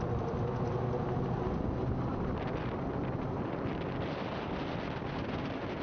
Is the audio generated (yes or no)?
yes